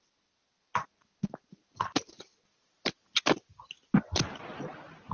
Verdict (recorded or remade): recorded